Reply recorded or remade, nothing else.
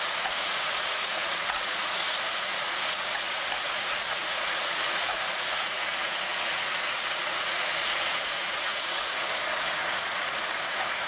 remade